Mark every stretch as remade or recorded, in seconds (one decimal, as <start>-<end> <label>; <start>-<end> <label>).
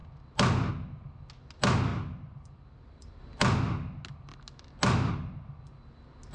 0.0-1.9 recorded; 1.9-3.2 remade; 3.2-6.3 recorded